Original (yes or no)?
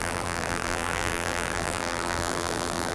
no